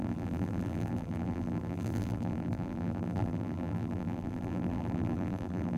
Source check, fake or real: fake